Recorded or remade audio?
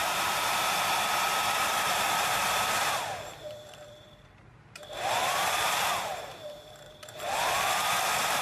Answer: remade